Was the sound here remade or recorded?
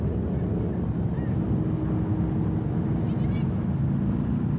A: recorded